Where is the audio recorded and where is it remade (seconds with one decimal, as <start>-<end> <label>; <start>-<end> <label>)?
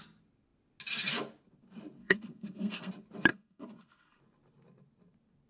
0.0-2.0 recorded; 2.0-2.9 remade; 2.9-3.3 recorded; 3.3-4.2 remade; 4.2-5.5 recorded